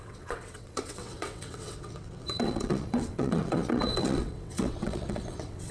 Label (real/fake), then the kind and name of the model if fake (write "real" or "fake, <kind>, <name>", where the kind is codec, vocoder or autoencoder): fake, vocoder, WaveNeXt